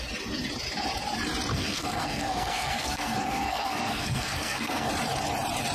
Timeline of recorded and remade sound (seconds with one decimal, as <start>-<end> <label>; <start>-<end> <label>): 0.0-1.5 recorded; 1.5-4.9 remade; 4.9-5.7 recorded